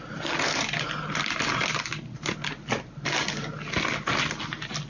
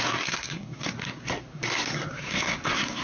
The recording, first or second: first